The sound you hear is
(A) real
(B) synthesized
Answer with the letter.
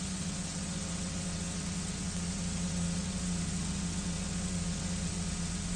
B